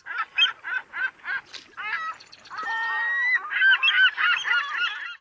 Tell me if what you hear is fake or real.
real